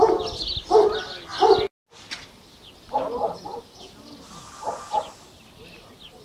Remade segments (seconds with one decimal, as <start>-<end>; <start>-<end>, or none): none